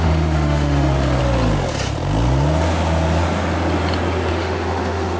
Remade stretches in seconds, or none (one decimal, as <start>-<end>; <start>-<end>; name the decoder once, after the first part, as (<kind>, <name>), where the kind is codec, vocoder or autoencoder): 0.0-1.2 (autoencoder, DAC-VAE); 4.3-5.2